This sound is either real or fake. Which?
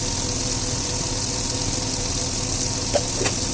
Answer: real